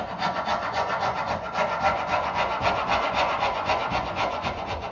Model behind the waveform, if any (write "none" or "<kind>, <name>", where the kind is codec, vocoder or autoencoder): vocoder, Vocos